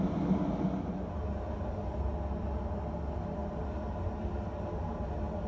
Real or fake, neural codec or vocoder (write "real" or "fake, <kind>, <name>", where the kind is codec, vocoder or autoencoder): real